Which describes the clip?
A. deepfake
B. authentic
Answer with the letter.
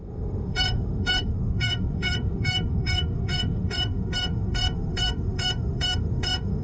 A